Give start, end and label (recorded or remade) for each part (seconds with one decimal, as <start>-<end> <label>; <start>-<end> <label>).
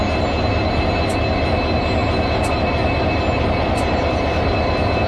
0.0-5.1 recorded